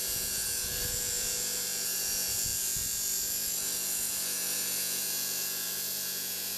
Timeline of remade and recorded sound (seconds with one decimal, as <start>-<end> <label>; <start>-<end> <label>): 0.0-6.6 remade